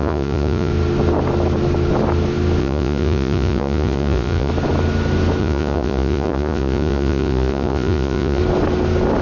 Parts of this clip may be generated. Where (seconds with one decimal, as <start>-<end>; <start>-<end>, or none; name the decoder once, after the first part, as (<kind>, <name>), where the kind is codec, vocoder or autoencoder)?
0.0-0.7 (vocoder, Vocos); 2.6-4.5; 5.4-8.4